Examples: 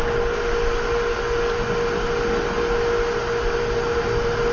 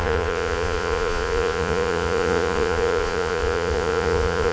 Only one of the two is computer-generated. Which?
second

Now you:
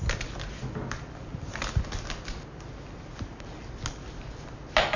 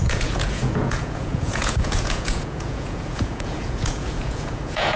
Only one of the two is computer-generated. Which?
second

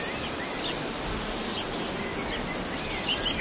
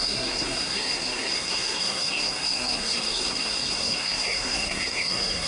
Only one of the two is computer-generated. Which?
second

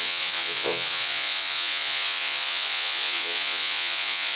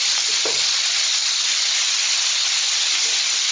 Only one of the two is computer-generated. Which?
first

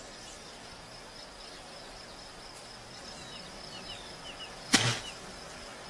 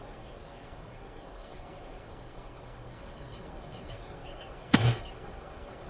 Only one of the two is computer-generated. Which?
second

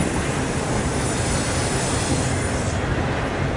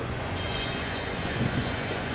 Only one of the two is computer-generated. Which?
second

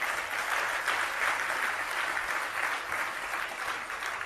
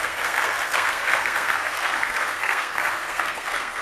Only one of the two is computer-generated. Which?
second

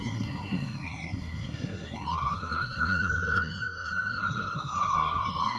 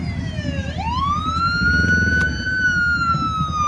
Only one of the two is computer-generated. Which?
first